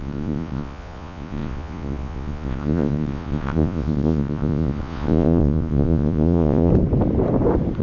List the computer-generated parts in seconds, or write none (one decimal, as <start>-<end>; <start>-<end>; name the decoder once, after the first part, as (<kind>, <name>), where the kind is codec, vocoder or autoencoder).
0.0-6.7 (vocoder, Vocos)